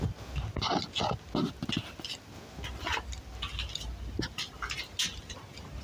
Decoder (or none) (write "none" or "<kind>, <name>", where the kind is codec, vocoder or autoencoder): none